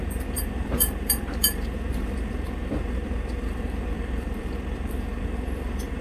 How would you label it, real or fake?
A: fake